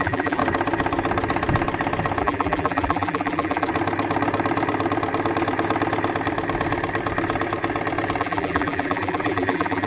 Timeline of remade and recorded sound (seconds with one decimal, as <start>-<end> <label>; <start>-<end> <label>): 0.0-0.4 remade; 0.4-2.2 recorded; 2.2-3.7 remade; 3.7-8.2 recorded; 8.2-9.9 remade